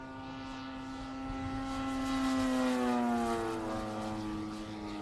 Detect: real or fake real